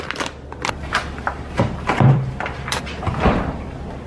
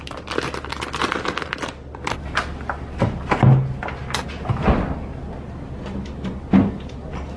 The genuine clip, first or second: second